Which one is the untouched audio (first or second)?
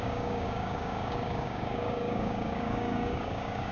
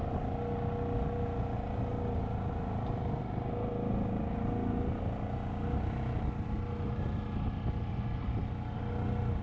second